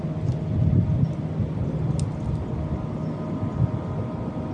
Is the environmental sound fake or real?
real